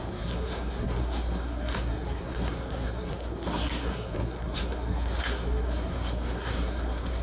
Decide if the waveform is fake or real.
fake